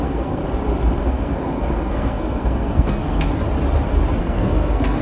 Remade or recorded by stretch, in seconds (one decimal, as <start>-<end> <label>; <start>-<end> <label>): 0.0-0.4 remade; 0.4-1.0 recorded; 1.0-3.3 remade; 3.3-4.2 recorded; 4.2-5.0 remade